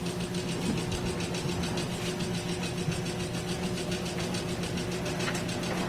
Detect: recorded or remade recorded